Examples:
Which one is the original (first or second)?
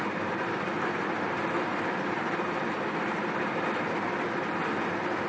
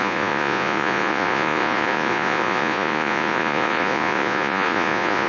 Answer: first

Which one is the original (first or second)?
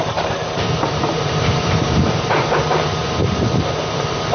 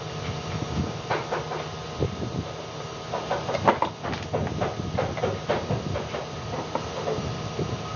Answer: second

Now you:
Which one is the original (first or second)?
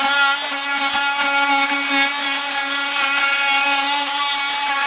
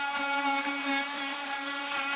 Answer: first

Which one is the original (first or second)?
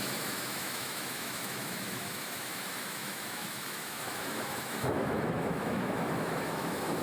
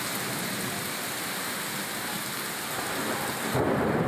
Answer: second